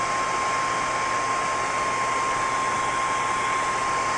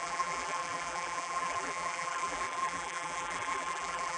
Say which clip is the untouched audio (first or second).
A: first